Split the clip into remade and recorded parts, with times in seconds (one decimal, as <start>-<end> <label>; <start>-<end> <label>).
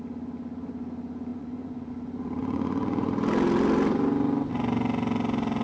0.0-1.3 recorded; 1.3-1.9 remade; 1.9-2.4 recorded; 2.4-3.1 remade; 3.1-5.6 recorded